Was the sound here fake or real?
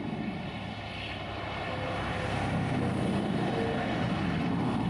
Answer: real